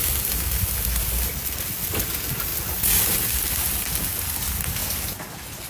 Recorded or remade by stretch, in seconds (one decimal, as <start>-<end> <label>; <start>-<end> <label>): 0.0-5.7 recorded